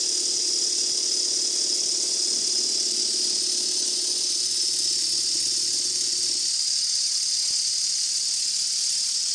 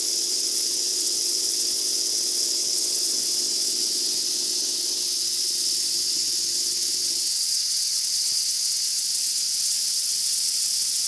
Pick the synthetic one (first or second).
second